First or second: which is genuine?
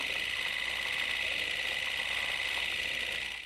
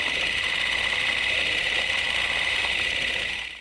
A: first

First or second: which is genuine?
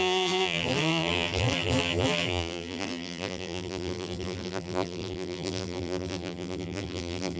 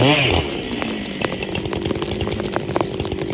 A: second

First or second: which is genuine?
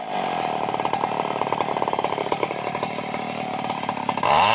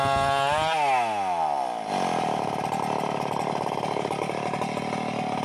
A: second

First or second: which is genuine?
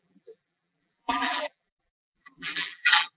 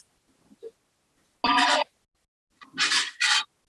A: second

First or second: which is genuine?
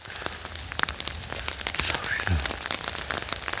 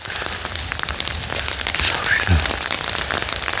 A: first